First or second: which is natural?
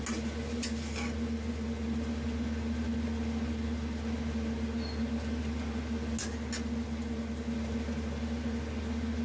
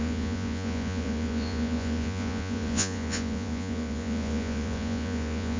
first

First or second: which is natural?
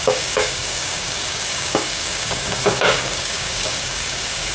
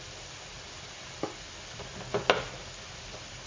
second